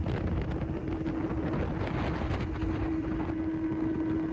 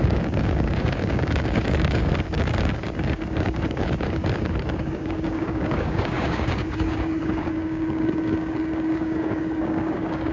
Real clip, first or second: first